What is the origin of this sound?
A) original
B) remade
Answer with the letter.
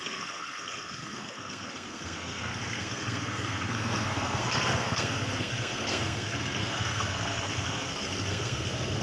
B